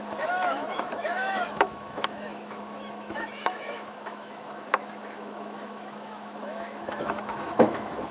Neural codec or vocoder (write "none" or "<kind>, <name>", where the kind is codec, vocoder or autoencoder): autoencoder, DAC-VAE